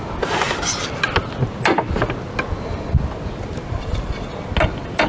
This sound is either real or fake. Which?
real